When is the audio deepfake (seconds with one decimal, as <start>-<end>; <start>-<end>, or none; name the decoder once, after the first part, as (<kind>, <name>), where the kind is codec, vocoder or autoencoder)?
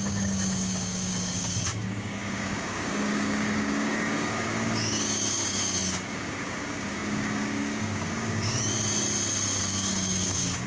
0.0-8.7 (codec, DAC); 9.6-10.7